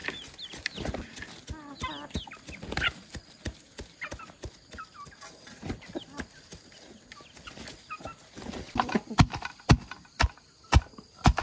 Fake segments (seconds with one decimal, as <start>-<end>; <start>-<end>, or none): none